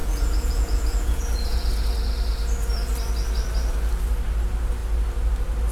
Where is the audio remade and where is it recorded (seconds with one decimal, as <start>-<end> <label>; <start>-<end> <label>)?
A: 0.0-1.7 remade; 1.7-5.7 recorded

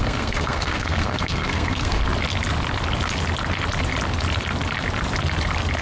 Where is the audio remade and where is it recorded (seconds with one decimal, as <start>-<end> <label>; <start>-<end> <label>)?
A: 0.0-2.0 remade; 2.0-5.8 recorded

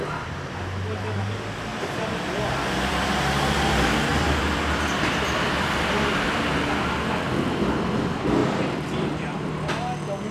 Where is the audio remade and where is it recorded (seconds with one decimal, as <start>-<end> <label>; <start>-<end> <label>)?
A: 0.0-1.7 recorded; 1.7-3.1 remade; 3.1-4.1 recorded; 4.1-6.6 remade; 6.6-8.4 recorded; 8.4-9.5 remade; 9.5-10.3 recorded

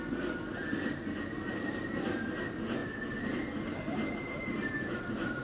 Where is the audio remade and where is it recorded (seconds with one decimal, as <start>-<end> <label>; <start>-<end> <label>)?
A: 0.0-5.4 recorded

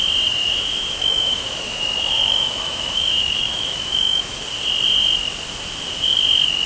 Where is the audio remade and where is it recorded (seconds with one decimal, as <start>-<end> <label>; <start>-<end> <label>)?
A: 0.0-0.4 recorded; 0.4-4.4 remade; 4.4-6.7 recorded

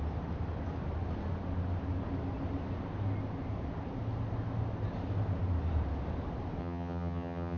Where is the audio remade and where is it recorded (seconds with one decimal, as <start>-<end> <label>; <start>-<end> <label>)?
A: 0.0-6.6 recorded; 6.6-7.6 remade